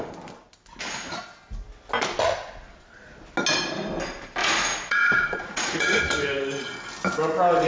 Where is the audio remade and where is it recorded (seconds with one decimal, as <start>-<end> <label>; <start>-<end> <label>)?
0.0-4.4 recorded; 4.4-6.0 remade; 6.0-7.7 recorded